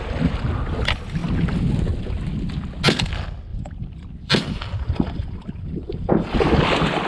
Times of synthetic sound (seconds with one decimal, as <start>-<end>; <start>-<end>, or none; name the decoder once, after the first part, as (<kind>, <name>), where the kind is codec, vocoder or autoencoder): 3.5-7.1 (vocoder, BigVGAN v2)